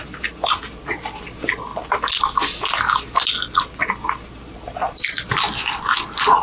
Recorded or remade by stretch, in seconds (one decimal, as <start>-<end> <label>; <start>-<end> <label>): 0.0-6.4 recorded